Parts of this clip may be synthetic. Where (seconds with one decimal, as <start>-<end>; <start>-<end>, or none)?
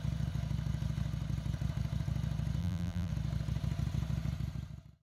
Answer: 2.6-3.1